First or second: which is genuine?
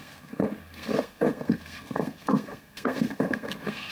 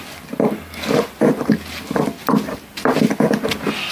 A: second